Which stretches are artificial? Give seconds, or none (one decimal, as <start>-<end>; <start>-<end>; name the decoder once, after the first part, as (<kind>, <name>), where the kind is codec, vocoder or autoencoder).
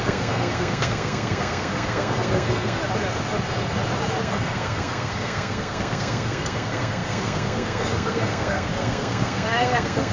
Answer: 0.0-2.8 (codec, SNAC); 4.2-10.1